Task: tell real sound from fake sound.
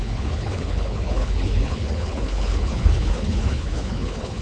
fake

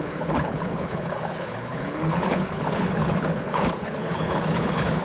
fake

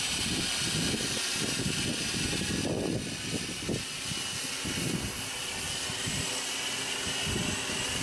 real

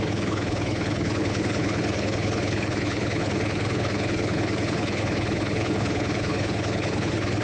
fake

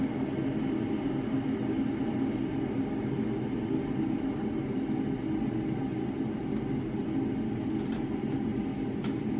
real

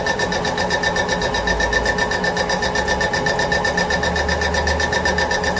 real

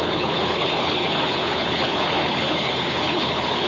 fake